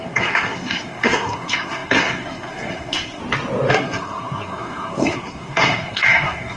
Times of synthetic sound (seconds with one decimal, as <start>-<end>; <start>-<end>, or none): 0.0-3.2; 3.7-6.6